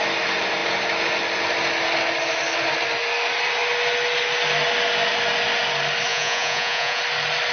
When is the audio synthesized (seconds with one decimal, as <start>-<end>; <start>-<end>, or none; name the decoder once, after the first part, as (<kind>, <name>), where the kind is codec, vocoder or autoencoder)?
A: 6.1-7.0 (vocoder, Vocos)